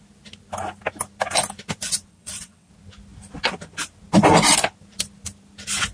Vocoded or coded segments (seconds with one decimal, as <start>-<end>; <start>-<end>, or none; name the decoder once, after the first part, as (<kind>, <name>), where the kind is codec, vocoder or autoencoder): 2.1-2.7 (vocoder, WaveNeXt)